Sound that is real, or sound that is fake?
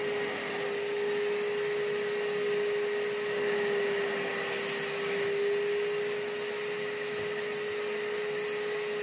real